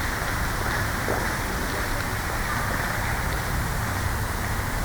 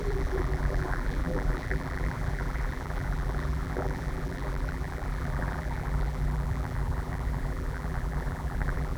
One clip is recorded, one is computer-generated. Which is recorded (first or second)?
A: first